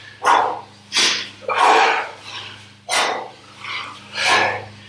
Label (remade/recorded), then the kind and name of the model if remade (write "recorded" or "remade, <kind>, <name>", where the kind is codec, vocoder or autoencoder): recorded